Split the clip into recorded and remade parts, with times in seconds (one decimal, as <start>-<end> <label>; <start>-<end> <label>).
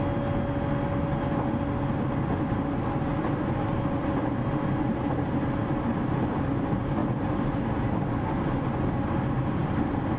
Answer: 0.0-3.1 recorded; 3.1-4.1 remade; 4.1-5.9 recorded; 5.9-6.5 remade; 6.5-9.6 recorded; 9.6-10.2 remade